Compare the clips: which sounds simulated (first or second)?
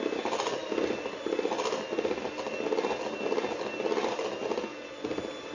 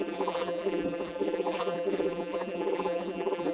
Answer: second